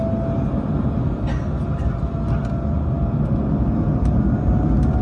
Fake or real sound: real